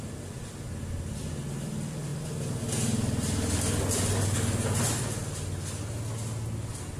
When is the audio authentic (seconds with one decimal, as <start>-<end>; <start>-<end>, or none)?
0.0-7.0